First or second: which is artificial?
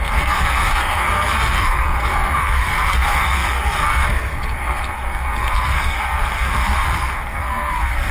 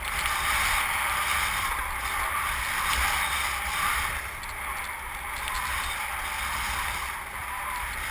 first